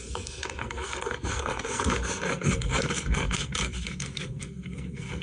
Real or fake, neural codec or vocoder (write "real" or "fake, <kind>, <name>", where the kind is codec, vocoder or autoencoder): fake, codec, SNAC